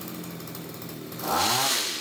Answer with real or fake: real